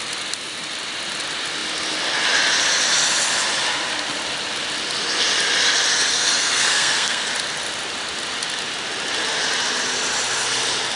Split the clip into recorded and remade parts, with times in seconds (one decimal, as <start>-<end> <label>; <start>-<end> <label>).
0.0-6.1 recorded; 6.1-7.3 remade; 7.3-11.0 recorded